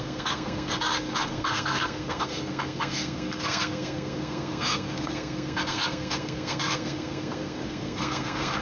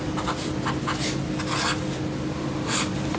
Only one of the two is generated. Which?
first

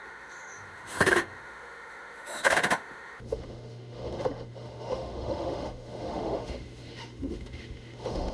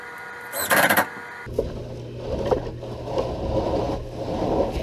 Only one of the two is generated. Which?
first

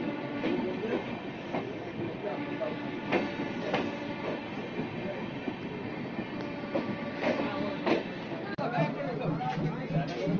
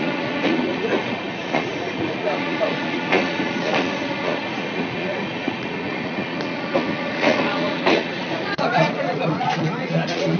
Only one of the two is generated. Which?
second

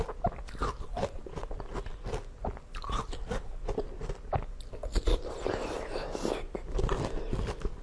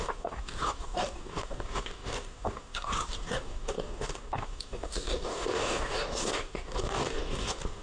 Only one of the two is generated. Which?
second